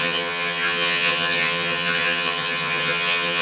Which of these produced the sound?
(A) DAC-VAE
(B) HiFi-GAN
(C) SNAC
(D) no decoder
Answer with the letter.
B